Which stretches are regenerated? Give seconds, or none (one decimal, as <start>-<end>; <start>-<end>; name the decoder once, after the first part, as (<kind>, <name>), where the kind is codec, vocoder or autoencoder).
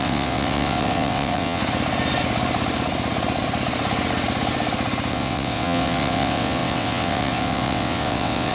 0.0-1.6 (vocoder, WaveNeXt); 5.1-8.5